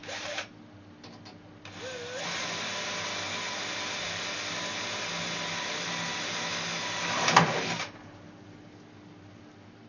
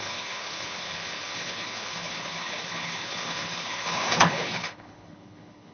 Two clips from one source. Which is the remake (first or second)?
second